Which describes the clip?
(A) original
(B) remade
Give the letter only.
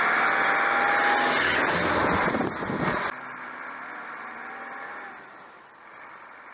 A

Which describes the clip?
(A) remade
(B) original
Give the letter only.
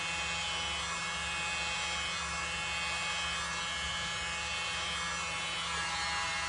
B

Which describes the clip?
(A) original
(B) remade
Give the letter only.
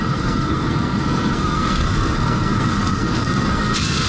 B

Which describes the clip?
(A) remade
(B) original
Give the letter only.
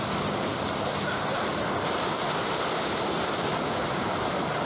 B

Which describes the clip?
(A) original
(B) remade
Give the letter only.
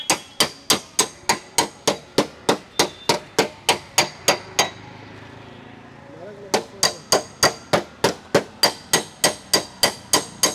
A